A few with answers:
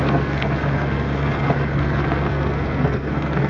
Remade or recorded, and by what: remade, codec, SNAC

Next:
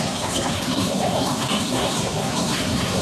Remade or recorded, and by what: remade, codec, SNAC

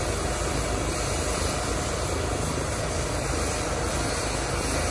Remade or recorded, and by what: recorded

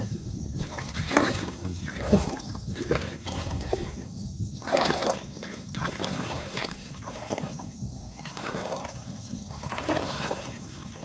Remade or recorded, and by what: remade, codec, SNAC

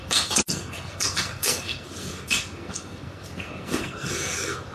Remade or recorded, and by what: remade, codec, SNAC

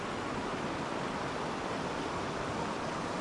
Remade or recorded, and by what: recorded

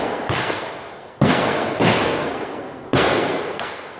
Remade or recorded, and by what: remade, codec, SNAC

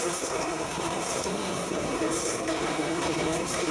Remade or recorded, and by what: remade, codec, SNAC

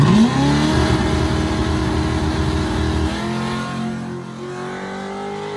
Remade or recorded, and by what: recorded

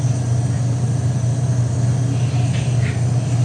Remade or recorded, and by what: recorded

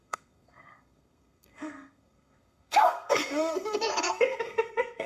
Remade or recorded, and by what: remade, codec, SNAC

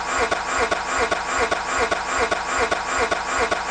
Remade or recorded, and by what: recorded